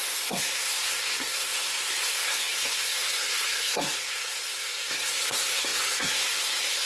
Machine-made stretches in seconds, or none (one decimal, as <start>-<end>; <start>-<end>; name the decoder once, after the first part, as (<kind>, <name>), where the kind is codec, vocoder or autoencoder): 0.0-6.9 (codec, SNAC)